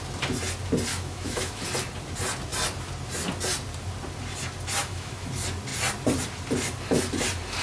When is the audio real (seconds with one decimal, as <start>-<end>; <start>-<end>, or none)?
0.0-0.9; 1.6-4.8; 5.3-7.6